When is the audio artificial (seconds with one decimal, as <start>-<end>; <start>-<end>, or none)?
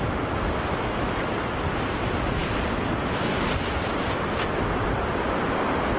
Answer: none